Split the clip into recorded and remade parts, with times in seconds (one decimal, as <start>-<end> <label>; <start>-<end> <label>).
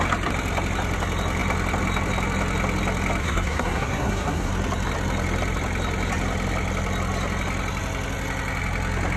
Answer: 0.0-3.2 recorded; 3.2-4.5 remade; 4.5-9.2 recorded